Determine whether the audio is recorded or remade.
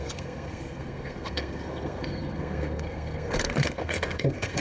remade